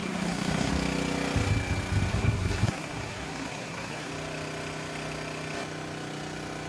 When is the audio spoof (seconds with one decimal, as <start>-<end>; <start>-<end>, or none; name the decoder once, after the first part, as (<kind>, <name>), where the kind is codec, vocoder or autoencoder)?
0.0-0.7 (codec, SNAC); 2.1-4.1